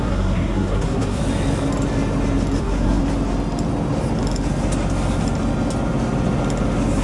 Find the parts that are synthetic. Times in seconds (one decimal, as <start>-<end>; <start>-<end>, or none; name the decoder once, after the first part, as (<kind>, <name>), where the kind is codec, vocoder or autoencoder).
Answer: 0.0-1.2 (codec, SNAC); 2.6-3.0